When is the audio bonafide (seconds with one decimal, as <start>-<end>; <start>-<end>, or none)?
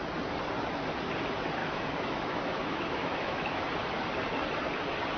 0.0-1.6; 3.6-5.2